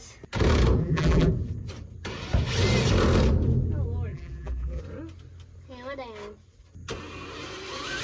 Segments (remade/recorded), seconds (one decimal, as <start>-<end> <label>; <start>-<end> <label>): 0.0-0.8 recorded; 0.8-1.3 remade; 1.3-4.1 recorded; 4.1-4.8 remade; 4.8-8.0 recorded